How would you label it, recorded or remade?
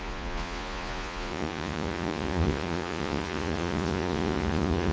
remade